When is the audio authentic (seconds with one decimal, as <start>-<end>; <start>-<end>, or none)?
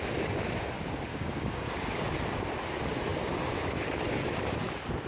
0.0-1.1; 1.7-5.1